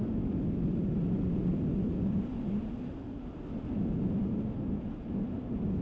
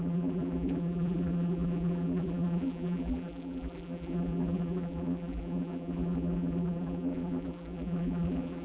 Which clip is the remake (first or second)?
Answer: second